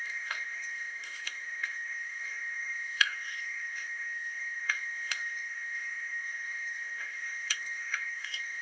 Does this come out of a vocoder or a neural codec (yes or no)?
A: yes